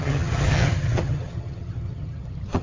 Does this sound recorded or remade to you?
remade